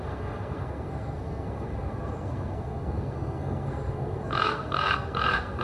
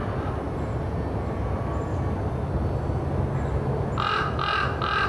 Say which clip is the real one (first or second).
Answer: second